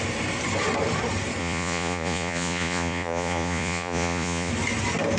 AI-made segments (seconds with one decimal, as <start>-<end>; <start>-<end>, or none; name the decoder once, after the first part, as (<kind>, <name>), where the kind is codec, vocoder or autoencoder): 1.4-4.5 (vocoder, Vocos)